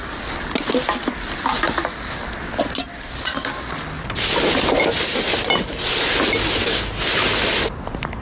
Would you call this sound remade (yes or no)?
no